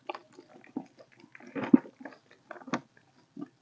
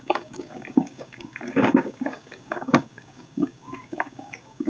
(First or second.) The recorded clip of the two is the first